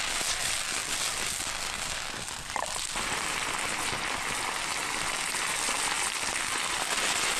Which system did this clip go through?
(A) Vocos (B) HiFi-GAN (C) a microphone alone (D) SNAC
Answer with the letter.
C